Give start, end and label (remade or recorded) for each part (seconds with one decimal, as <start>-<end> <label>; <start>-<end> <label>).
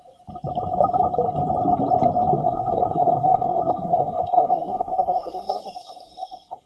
0.0-2.4 recorded; 2.4-6.7 remade